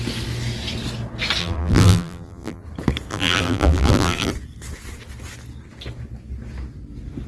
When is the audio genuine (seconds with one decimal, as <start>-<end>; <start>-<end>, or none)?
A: 0.0-1.4; 2.6-3.1; 4.3-7.3